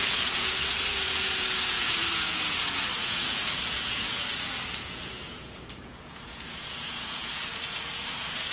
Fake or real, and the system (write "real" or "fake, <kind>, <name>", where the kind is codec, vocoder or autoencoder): fake, vocoder, Vocos